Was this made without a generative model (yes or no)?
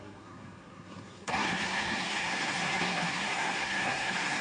no